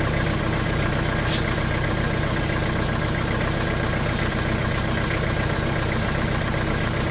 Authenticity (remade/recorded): remade